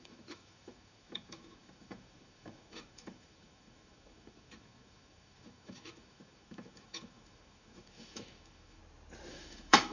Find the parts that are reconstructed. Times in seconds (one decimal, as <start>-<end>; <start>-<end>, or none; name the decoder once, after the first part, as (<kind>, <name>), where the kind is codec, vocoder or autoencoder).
0.0-8.8 (autoencoder, DAC-VAE); 9.3-9.9